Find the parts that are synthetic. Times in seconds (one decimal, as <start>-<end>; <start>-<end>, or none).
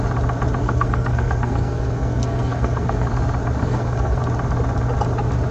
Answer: 0.6-3.1; 3.6-4.2